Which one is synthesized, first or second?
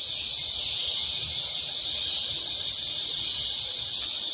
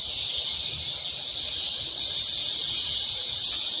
second